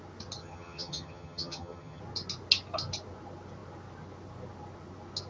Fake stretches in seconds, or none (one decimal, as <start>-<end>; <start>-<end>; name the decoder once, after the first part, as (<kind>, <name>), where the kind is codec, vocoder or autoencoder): 0.4-2.0 (vocoder, HiFi-GAN)